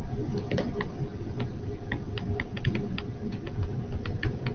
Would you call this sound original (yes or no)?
yes